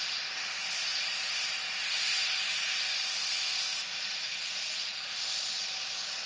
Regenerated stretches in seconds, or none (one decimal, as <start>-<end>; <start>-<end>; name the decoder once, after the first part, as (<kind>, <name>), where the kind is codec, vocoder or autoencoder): 3.7-5.2 (vocoder, Vocos)